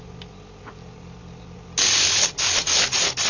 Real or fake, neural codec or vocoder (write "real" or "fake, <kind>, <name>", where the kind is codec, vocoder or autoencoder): real